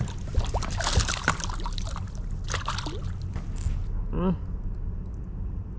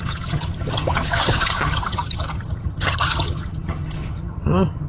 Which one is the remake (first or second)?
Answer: second